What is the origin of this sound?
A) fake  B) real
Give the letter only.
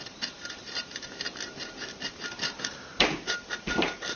A